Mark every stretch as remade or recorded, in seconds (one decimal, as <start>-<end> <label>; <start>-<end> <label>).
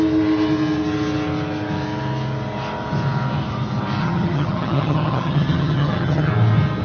0.0-4.0 recorded; 4.0-6.3 remade; 6.3-6.8 recorded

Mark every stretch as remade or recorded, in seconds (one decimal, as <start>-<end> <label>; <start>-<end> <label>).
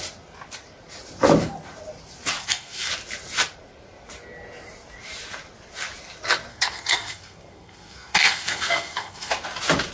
0.0-2.4 recorded; 2.4-2.9 remade; 2.9-6.5 recorded; 6.5-9.3 remade; 9.3-9.9 recorded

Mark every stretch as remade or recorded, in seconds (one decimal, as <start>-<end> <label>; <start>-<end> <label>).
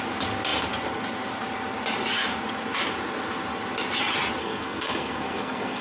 0.0-4.4 recorded; 4.4-5.8 remade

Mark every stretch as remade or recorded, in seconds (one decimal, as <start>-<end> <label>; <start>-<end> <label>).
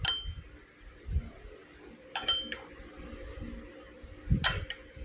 0.0-5.0 recorded